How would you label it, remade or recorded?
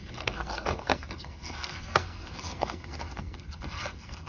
remade